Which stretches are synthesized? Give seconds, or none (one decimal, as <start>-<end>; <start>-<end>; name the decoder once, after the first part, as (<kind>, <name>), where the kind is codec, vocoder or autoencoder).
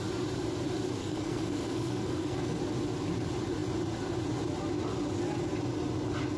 1.0-2.6 (codec, SNAC)